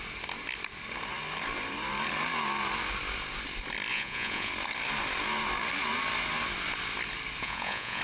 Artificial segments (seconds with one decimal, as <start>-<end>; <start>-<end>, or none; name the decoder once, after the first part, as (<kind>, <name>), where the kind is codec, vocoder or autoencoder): 3.9-4.5 (vocoder, Vocos); 7.4-8.0